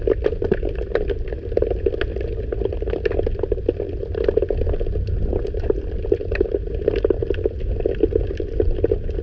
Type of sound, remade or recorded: recorded